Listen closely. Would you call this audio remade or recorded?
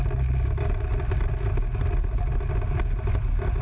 recorded